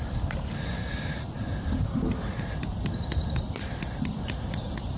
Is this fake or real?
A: real